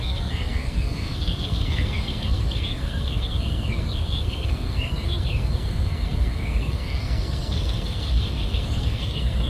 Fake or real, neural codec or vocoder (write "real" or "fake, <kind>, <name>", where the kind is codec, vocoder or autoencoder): fake, codec, SNAC